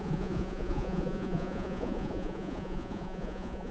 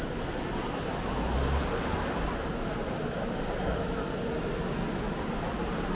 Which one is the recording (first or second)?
second